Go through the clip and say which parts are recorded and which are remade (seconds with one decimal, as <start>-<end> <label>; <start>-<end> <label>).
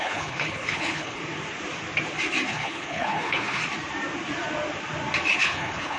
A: 0.0-1.2 remade; 1.2-2.5 recorded; 2.5-3.6 remade; 3.6-5.4 recorded; 5.4-6.0 remade